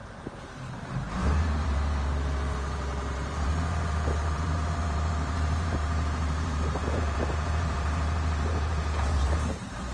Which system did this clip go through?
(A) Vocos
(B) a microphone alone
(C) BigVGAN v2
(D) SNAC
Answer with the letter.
C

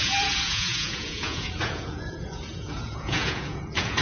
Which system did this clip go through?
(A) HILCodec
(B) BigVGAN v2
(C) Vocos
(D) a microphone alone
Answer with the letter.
C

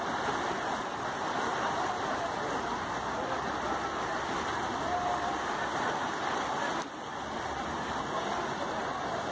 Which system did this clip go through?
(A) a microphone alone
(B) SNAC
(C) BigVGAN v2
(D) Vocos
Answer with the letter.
A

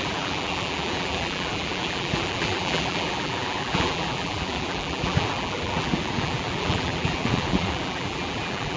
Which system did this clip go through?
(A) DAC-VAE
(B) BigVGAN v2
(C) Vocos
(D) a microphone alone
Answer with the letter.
B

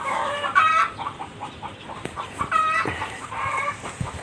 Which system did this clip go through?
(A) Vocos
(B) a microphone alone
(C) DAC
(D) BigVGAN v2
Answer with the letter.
D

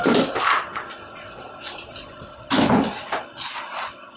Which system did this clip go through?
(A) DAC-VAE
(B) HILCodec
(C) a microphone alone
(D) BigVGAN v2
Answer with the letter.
C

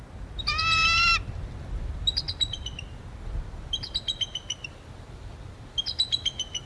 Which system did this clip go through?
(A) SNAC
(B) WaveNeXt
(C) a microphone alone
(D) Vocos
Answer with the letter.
C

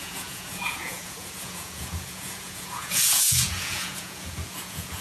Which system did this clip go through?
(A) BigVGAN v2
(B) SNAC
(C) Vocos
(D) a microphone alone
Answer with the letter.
C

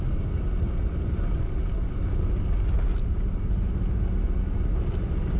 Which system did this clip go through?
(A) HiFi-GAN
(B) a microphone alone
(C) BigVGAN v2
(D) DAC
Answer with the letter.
B